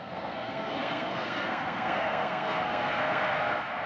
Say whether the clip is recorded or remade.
remade